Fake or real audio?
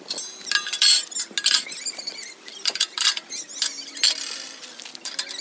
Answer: real